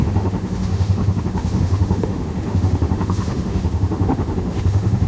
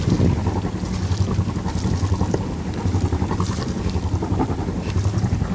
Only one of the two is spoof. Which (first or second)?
first